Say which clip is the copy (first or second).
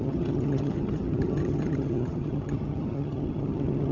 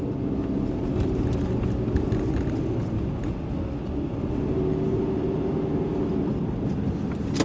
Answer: first